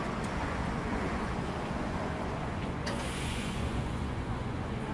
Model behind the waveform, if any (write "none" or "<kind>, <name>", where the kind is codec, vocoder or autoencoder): vocoder, Vocos